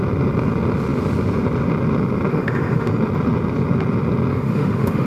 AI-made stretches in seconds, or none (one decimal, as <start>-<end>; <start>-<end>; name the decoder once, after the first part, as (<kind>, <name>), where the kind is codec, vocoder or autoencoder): 2.3-2.9 (autoencoder, DAC-VAE); 4.3-5.1